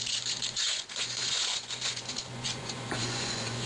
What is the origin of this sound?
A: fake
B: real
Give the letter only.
A